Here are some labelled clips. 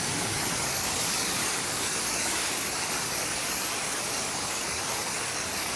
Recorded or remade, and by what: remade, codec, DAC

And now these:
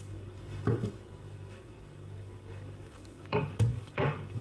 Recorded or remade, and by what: remade, codec, DAC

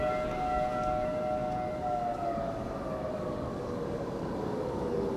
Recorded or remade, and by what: remade, codec, DAC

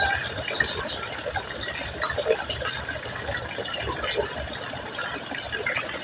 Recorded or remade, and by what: recorded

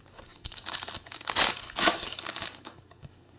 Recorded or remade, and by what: remade, codec, DAC